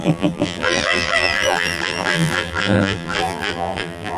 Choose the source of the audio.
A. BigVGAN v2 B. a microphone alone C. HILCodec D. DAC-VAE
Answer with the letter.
A